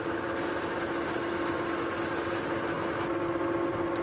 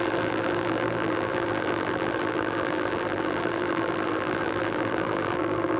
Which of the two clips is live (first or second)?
first